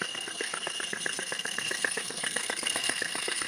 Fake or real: fake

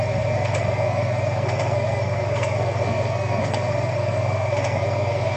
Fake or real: fake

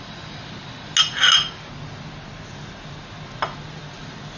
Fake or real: real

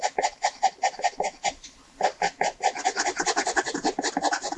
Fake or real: real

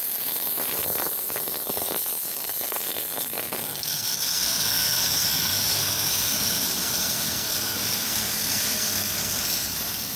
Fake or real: fake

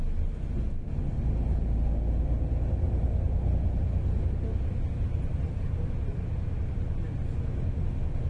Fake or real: real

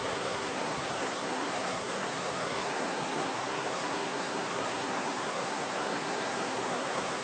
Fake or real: fake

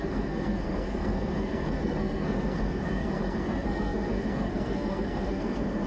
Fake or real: fake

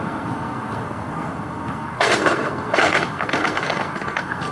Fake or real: fake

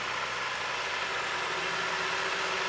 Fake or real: real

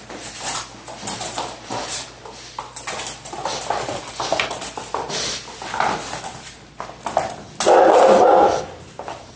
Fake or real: real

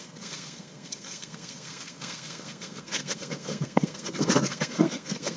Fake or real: fake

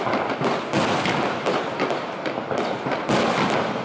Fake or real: real